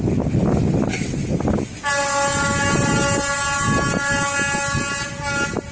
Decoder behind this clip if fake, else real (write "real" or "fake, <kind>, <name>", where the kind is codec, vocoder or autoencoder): real